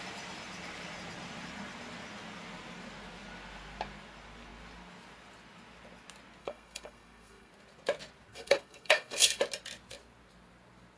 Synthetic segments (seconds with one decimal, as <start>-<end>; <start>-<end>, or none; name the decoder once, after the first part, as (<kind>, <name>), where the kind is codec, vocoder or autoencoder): 6.4-7.5 (codec, SNAC); 8.3-9.4